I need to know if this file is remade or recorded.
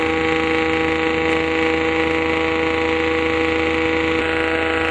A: recorded